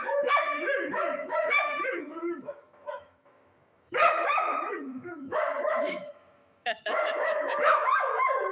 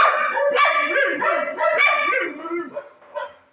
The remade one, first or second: first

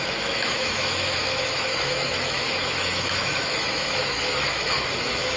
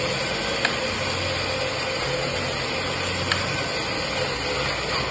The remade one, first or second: first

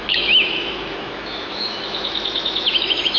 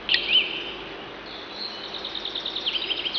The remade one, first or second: first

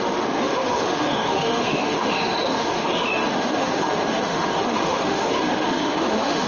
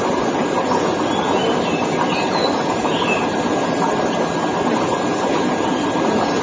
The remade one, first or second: first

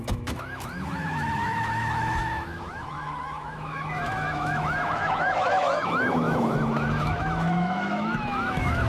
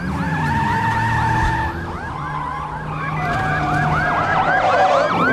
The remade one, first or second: first